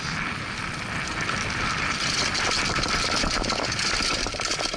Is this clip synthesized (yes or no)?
no